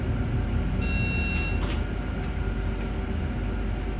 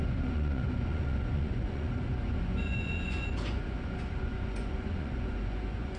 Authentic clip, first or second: first